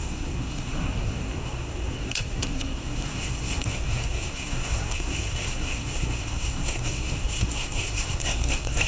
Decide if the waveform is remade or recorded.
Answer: remade